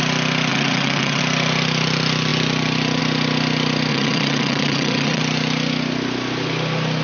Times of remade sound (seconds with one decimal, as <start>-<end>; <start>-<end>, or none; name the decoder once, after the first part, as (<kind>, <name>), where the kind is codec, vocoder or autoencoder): 0.5-1.2 (vocoder, WaveNeXt); 3.9-5.2